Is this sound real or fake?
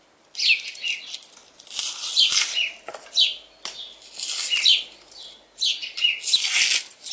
real